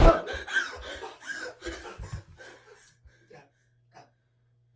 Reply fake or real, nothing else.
real